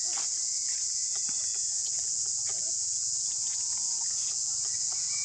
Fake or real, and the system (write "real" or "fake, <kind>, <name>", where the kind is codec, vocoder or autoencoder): fake, vocoder, Vocos